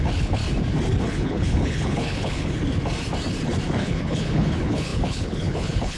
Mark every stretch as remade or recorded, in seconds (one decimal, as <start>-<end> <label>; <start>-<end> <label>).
0.0-0.4 remade; 0.4-1.0 recorded; 1.0-2.6 remade; 2.6-3.7 recorded; 3.7-6.0 remade